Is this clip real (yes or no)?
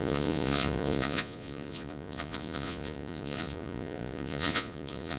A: no